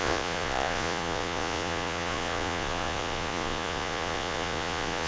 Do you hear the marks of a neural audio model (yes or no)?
yes